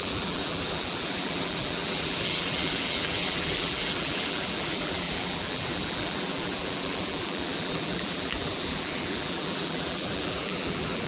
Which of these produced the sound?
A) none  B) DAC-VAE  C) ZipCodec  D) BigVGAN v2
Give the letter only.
D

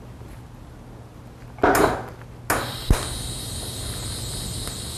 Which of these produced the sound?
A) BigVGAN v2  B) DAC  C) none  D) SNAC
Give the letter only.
C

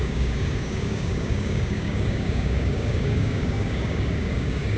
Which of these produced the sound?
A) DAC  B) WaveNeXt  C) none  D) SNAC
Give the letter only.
A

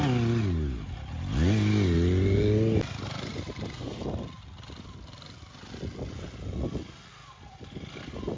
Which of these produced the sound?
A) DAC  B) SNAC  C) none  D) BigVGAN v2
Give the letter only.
C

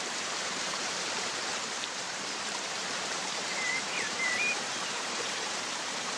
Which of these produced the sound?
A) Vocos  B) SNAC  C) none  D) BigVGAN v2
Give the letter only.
D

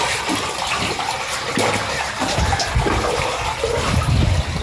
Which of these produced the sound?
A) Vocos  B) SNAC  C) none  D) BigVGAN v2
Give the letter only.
C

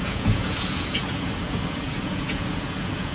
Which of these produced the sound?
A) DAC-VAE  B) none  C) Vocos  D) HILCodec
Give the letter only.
C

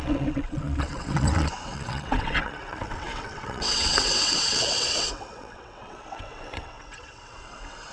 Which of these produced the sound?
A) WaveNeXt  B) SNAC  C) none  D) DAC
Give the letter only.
A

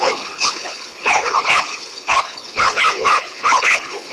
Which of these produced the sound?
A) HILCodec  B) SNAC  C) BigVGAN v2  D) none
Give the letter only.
A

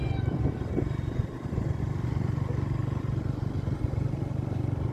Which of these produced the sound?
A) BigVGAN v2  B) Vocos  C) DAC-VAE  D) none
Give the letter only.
D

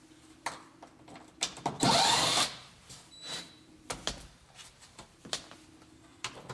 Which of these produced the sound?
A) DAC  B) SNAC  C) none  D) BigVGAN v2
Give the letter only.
D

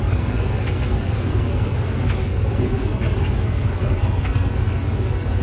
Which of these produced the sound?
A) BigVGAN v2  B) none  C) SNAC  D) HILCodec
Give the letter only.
C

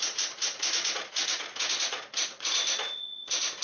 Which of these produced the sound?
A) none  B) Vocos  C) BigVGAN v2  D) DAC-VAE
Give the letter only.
B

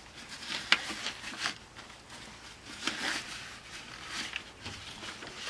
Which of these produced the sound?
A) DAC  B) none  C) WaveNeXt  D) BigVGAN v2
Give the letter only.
B